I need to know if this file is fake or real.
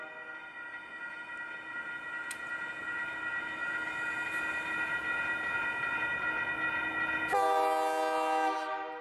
real